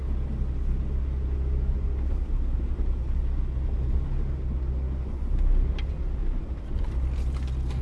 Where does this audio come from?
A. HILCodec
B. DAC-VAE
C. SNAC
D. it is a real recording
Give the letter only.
D